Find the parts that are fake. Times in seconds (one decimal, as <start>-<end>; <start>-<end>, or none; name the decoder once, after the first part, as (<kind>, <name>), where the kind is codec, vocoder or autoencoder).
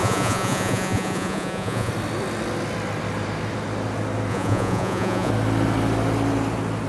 0.0-1.9 (vocoder, Vocos); 4.3-5.3